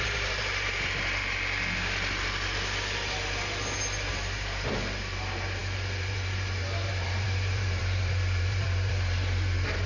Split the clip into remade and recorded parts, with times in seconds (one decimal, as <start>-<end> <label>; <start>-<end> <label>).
0.0-1.2 remade; 1.2-4.1 recorded; 4.1-9.9 remade